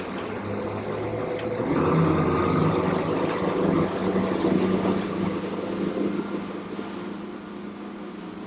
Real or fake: real